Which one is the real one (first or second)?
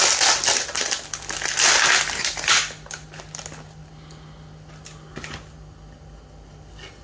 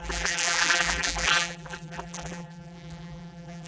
first